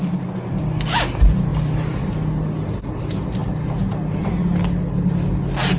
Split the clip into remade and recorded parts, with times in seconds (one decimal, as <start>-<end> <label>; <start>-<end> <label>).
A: 0.0-1.5 recorded; 1.5-2.1 remade; 2.1-5.8 recorded